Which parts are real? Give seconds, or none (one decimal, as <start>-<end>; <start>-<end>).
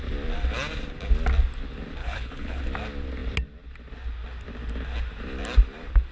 0.0-2.0; 2.6-6.1